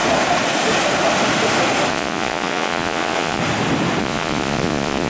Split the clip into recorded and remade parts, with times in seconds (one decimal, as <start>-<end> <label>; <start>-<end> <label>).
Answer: 0.0-1.9 recorded; 1.9-3.4 remade; 3.4-4.0 recorded; 4.0-5.1 remade